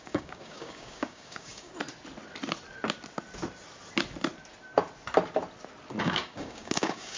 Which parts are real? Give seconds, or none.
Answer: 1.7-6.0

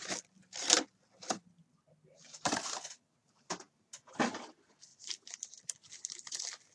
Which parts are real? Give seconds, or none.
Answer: 0.0-1.7; 2.6-3.2; 3.9-6.7

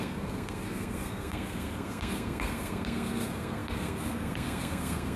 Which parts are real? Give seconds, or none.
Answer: none

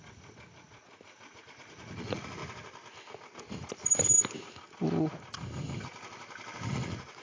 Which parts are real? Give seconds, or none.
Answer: 2.4-6.7